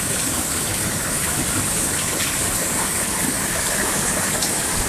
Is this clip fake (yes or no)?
yes